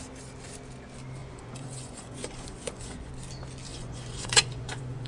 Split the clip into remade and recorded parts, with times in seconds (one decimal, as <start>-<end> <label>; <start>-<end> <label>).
0.0-1.2 recorded; 1.2-3.1 remade; 3.1-3.7 recorded; 3.7-5.1 remade